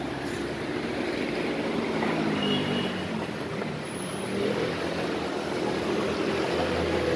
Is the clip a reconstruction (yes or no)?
no